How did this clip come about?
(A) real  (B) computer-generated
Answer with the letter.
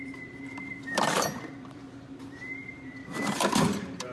B